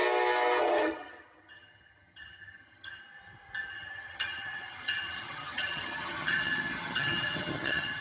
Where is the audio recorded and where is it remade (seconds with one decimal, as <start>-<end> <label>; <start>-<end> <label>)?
0.0-0.6 recorded; 0.6-3.0 remade; 3.0-3.7 recorded; 3.7-8.0 remade